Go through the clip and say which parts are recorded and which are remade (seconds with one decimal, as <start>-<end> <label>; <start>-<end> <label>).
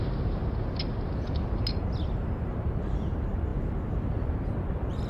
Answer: 0.0-5.1 remade